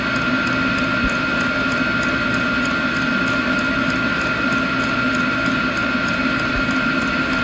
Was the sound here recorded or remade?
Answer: recorded